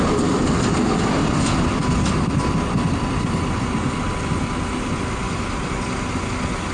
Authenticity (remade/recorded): recorded